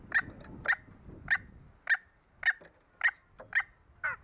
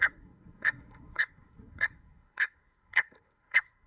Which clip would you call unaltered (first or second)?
first